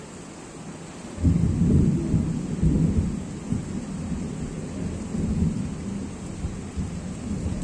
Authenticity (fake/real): real